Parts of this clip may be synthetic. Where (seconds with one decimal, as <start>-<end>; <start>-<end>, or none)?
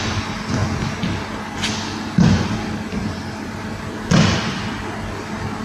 none